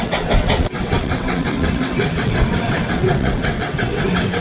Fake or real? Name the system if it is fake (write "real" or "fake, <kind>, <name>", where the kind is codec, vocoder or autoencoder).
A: fake, vocoder, WaveNeXt